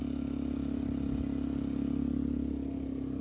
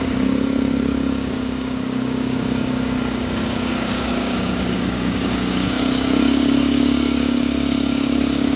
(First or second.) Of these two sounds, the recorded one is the first